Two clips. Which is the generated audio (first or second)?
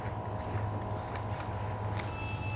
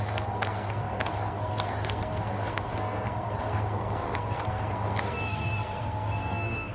second